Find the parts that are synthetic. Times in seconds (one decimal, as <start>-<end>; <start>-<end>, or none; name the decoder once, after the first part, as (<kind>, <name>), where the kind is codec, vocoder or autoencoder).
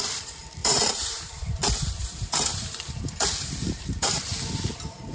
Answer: 0.6-1.4 (vocoder, BigVGAN v2); 2.0-4.2